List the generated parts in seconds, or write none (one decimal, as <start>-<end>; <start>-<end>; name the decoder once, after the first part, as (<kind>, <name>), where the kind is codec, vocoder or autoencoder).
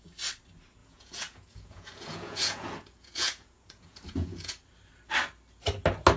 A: 0.8-4.5 (vocoder, Vocos)